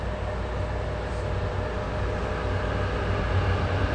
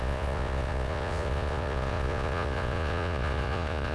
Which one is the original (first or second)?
first